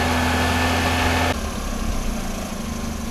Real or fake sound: real